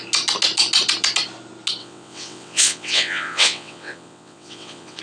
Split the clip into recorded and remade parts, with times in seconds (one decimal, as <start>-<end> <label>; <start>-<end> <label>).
0.0-1.8 recorded; 1.8-5.0 remade